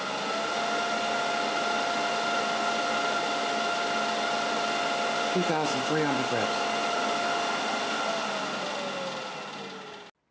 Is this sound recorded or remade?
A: recorded